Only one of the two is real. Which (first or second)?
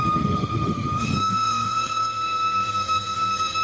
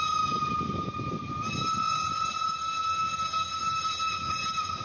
second